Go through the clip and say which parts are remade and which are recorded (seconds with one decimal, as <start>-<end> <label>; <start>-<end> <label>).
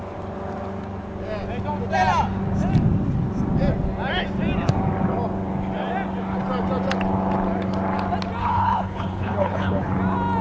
0.0-8.4 recorded; 8.4-9.9 remade; 9.9-10.4 recorded